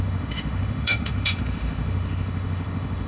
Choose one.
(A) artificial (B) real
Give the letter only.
A